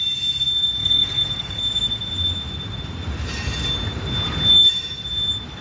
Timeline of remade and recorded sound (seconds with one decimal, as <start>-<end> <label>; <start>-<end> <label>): 0.0-0.8 recorded; 0.8-1.6 remade; 1.6-5.6 recorded